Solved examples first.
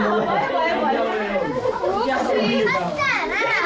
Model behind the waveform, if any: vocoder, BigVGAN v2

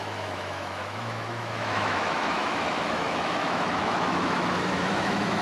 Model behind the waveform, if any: autoencoder, DAC-VAE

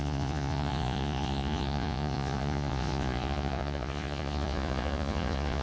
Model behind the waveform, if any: vocoder, Vocos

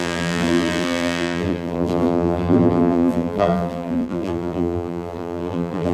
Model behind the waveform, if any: vocoder, BigVGAN v2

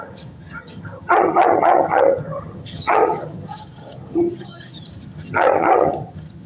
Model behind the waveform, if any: vocoder, HiFi-GAN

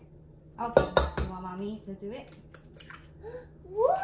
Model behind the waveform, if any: none